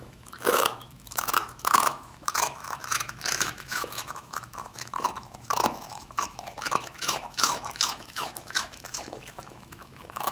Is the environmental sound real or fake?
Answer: fake